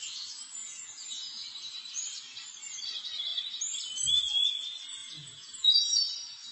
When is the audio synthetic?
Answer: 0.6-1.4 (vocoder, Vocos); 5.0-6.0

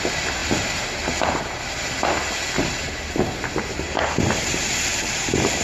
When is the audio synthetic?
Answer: 4.9-5.6 (vocoder, BigVGAN v2)

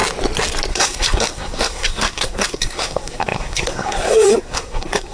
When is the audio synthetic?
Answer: 0.7-5.1 (codec, SNAC)

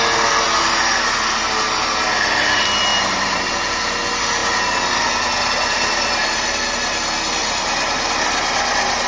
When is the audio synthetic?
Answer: 2.9-3.5 (vocoder, BigVGAN v2); 7.4-8.1

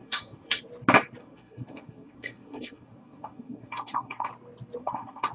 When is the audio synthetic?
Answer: 0.0-0.6 (codec, SNAC); 1.2-4.3; 4.8-5.3

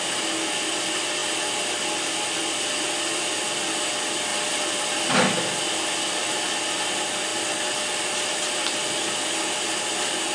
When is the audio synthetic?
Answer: 4.3-5.1 (vocoder, BigVGAN v2)

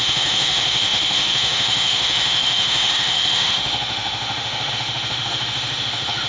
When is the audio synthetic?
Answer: 0.0-6.3 (autoencoder, DAC-VAE)